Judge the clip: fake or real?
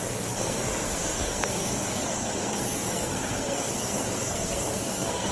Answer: fake